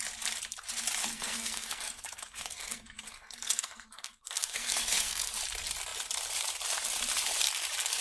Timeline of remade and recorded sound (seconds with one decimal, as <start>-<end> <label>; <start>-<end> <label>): 0.0-1.0 recorded; 1.0-5.3 remade; 5.3-8.0 recorded